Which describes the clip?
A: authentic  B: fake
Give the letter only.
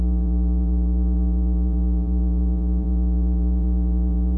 B